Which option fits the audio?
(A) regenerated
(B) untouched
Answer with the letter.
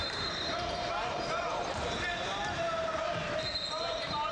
A